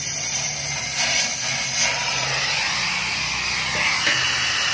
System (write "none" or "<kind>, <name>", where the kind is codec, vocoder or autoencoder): none